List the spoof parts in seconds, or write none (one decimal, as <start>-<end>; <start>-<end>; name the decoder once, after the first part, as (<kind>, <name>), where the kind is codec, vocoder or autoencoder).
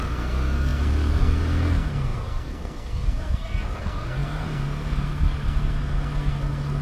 0.0-6.8 (codec, SNAC)